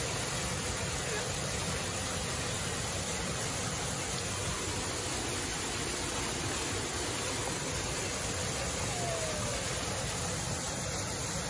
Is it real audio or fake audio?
real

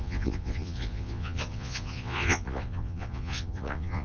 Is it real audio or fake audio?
fake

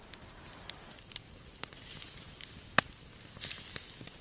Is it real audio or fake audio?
real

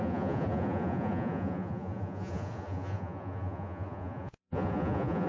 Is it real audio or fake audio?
fake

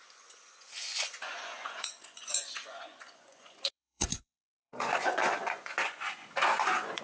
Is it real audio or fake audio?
fake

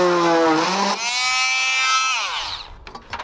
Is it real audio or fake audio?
real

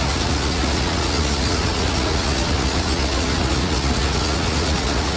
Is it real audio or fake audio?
fake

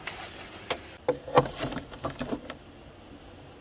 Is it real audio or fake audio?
real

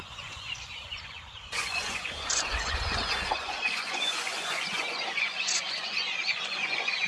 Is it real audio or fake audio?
fake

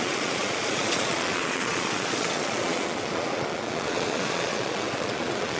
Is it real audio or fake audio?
fake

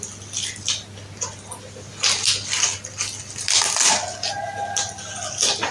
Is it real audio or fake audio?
real